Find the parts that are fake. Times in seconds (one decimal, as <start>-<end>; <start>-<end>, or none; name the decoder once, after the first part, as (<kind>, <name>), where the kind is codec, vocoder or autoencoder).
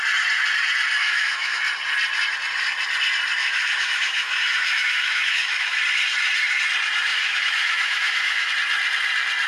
1.0-1.6 (autoencoder, DAC-VAE); 3.4-5.8; 7.1-8.5